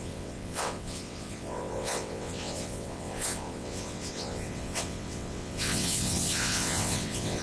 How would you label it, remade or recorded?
remade